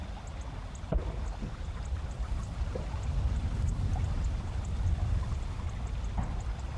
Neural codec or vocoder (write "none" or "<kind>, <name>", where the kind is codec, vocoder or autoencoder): vocoder, BigVGAN v2